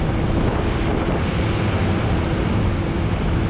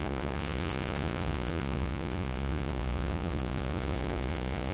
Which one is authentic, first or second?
first